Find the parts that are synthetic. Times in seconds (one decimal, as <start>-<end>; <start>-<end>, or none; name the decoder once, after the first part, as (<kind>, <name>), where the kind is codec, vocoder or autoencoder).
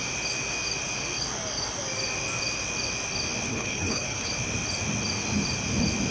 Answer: 3.5-4.3 (codec, HILCodec)